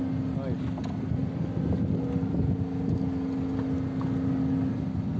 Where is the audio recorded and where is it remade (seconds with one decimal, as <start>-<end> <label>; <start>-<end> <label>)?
0.0-5.2 recorded